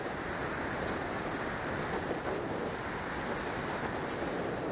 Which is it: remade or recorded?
recorded